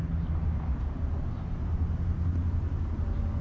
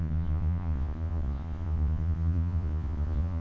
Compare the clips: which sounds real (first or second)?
first